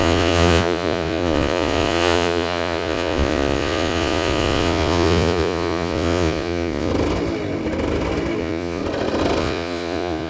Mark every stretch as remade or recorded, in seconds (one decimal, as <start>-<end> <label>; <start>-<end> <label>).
0.0-6.9 remade; 6.9-8.4 recorded; 8.4-8.8 remade; 8.8-9.4 recorded; 9.4-10.3 remade